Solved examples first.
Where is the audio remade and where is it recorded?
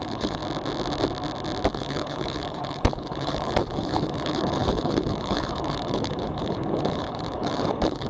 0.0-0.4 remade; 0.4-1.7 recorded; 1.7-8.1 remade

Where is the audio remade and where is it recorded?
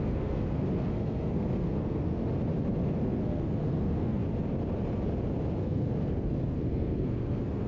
0.0-2.2 remade; 2.2-3.0 recorded; 3.0-4.2 remade; 4.2-5.6 recorded; 5.6-7.7 remade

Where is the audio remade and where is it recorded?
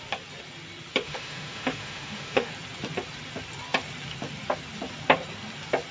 0.0-1.0 recorded; 1.0-2.5 remade; 2.5-5.9 recorded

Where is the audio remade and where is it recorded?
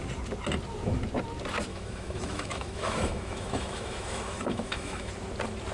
0.0-1.7 recorded; 1.7-5.1 remade; 5.1-5.7 recorded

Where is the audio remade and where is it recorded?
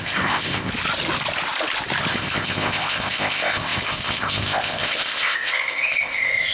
0.0-0.7 remade; 0.7-2.1 recorded; 2.1-6.5 remade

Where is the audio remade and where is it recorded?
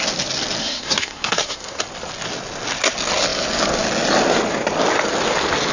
0.0-0.6 recorded; 0.6-1.8 remade; 1.8-5.7 recorded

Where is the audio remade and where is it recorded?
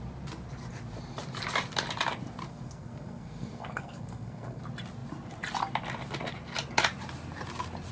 0.0-2.5 recorded; 2.5-4.6 remade; 4.6-7.9 recorded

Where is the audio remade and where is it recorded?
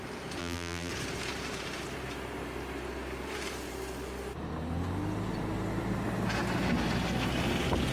0.0-0.4 recorded; 0.4-0.9 remade; 0.9-7.9 recorded